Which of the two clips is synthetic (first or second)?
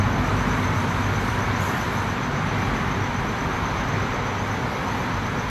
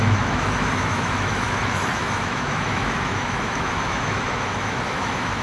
second